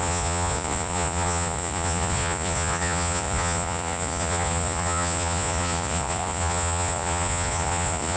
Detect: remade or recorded remade